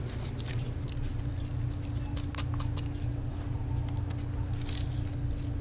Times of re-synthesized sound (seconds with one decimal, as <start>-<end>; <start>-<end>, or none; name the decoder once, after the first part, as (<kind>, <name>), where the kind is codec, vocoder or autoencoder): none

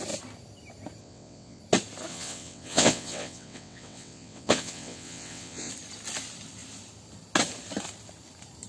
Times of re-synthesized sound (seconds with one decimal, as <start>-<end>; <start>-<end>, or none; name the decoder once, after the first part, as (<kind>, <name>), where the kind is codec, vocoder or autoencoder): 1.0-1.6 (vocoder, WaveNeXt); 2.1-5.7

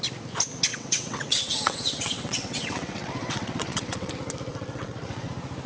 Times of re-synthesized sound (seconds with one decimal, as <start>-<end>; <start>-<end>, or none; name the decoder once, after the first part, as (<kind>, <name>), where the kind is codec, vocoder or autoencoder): 0.7-4.1 (vocoder, WaveNeXt); 4.5-5.3

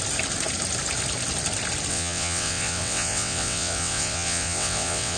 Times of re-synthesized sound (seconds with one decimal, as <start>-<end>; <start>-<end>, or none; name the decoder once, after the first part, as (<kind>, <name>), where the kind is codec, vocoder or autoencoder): 1.9-5.2 (vocoder, WaveNeXt)

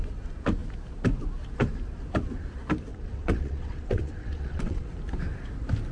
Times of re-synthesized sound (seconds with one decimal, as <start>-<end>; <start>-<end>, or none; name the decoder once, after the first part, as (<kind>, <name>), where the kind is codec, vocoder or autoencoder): 2.9-4.9 (vocoder, WaveNeXt)

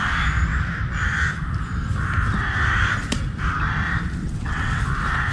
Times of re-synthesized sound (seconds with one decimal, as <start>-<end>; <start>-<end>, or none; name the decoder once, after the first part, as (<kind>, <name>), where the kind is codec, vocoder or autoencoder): 4.2-4.8 (vocoder, WaveNeXt)